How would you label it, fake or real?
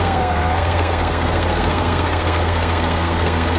fake